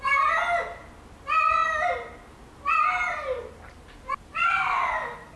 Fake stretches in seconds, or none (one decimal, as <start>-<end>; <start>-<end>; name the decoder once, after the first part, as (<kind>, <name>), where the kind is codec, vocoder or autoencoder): 4.3-5.4 (vocoder, BigVGAN v2)

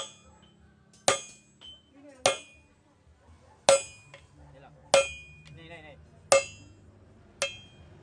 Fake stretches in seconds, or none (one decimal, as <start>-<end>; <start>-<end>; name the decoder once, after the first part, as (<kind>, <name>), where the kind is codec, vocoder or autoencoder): none